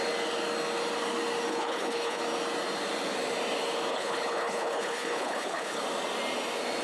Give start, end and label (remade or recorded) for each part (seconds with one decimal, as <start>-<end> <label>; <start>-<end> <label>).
0.0-1.5 recorded; 1.5-2.2 remade; 2.2-3.9 recorded; 3.9-5.8 remade; 5.8-6.8 recorded